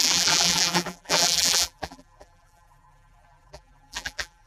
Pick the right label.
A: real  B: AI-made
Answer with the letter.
B